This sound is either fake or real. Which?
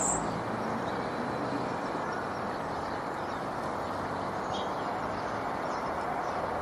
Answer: real